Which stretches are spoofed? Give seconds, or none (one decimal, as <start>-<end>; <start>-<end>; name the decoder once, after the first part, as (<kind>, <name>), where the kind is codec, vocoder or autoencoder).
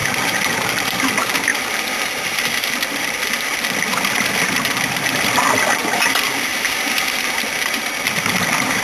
0.7-5.8 (vocoder, BigVGAN v2); 7.0-8.8